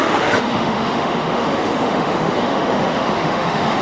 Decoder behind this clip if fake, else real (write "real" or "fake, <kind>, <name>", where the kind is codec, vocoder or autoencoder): fake, autoencoder, DAC-VAE